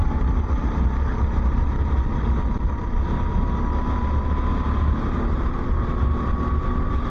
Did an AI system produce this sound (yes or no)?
no